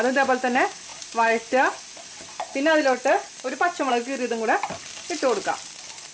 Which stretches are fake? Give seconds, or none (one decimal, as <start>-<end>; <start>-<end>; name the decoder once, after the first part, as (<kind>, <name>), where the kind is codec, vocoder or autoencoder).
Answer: none